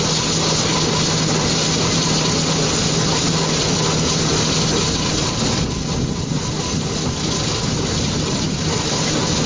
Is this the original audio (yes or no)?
yes